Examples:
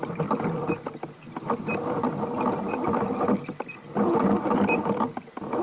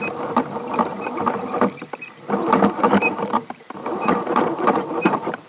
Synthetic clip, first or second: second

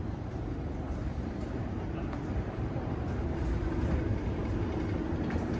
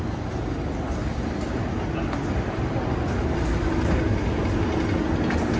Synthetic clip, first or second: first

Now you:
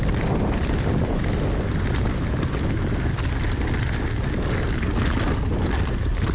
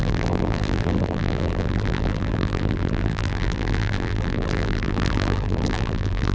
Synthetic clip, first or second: second